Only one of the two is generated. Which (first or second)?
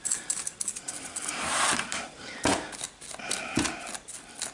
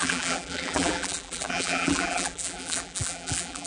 second